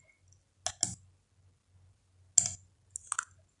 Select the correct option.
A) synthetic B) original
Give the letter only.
B